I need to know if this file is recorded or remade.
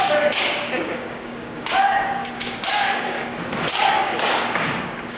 remade